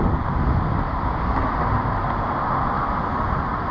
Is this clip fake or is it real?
real